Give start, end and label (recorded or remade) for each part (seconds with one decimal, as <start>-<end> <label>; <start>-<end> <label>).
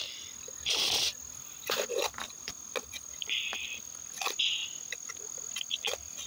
0.0-0.8 recorded; 0.8-2.7 remade; 2.7-4.6 recorded; 4.6-5.1 remade; 5.1-6.3 recorded